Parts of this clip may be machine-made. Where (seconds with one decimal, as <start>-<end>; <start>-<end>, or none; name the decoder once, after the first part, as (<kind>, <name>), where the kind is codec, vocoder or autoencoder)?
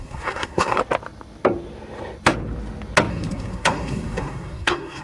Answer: 0.0-0.8 (codec, SNAC); 3.1-5.0